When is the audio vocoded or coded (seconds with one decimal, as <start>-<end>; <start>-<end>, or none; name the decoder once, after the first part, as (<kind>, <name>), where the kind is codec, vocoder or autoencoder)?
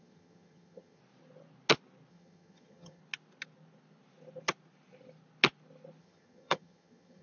0.0-1.0 (vocoder, HiFi-GAN); 2.1-3.0; 6.0-7.2